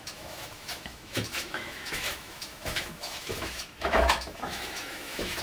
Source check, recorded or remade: remade